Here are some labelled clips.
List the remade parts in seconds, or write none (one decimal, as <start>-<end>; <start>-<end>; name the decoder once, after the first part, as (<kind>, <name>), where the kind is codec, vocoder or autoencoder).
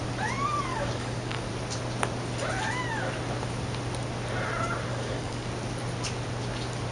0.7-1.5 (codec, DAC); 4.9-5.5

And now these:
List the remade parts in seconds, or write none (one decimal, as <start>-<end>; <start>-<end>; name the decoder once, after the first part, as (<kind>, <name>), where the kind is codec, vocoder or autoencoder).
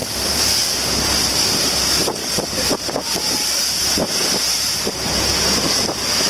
0.0-0.6 (vocoder, BigVGAN v2); 2.2-3.8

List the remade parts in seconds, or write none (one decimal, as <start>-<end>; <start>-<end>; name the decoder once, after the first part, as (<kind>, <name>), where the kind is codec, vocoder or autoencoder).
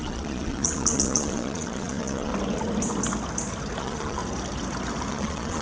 0.0-2.3 (vocoder, Vocos); 3.8-4.2; 5.1-5.6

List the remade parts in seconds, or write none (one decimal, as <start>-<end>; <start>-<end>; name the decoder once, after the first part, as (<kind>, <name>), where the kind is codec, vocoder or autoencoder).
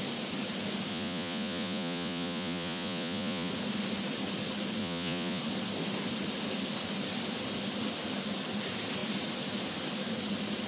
0.9-3.5 (vocoder, Vocos); 4.8-5.4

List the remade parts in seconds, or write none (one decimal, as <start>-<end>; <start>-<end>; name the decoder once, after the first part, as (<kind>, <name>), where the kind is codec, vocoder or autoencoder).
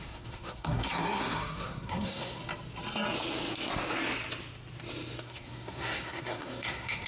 0.0-2.4 (codec, SNAC); 5.2-7.1